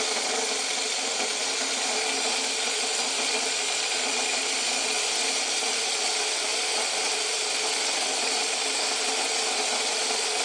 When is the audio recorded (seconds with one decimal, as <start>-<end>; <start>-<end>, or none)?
0.0-10.4

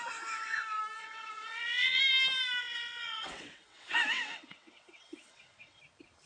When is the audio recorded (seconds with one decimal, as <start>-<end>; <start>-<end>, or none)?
0.0-1.0; 2.0-2.6; 5.8-6.3